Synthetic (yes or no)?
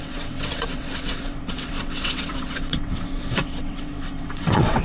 yes